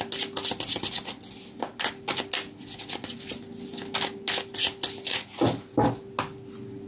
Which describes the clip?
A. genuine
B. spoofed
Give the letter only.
A